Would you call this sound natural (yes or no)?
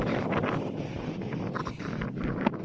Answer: yes